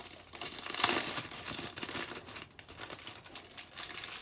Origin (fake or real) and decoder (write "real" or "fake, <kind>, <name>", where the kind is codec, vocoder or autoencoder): real